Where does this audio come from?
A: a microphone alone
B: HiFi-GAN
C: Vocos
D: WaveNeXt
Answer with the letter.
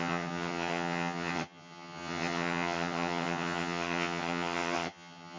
B